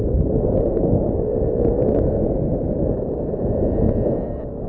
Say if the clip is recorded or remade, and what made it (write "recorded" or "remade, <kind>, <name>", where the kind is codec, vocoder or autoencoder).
recorded